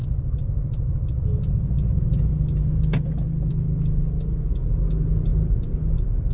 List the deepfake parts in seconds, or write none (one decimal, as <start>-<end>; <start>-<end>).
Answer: none